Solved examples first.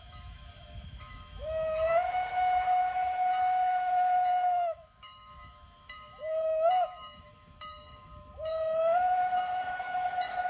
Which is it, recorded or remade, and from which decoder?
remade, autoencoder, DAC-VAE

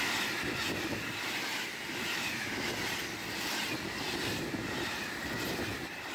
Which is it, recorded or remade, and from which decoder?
recorded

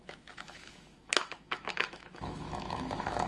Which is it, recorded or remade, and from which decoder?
remade, autoencoder, DAC-VAE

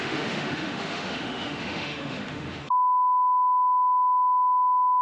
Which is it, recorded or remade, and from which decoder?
remade, autoencoder, DAC-VAE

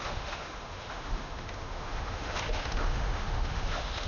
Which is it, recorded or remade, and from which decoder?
remade, autoencoder, DAC-VAE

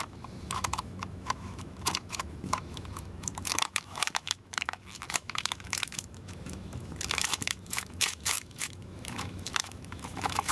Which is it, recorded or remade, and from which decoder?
remade, autoencoder, DAC-VAE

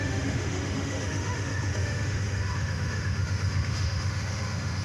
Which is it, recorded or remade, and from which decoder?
remade, autoencoder, DAC-VAE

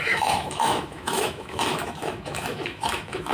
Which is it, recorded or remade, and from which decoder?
remade, autoencoder, DAC-VAE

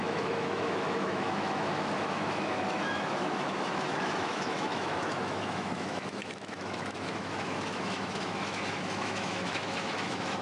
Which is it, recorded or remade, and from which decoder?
remade, autoencoder, DAC-VAE